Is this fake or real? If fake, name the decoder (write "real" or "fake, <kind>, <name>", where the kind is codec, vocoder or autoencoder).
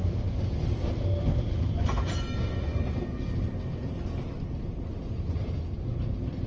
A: real